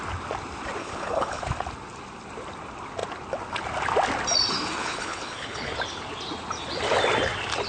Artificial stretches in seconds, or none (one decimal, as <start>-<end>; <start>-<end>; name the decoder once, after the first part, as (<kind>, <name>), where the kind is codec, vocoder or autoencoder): 0.8-1.4 (codec, HILCodec); 4.8-5.7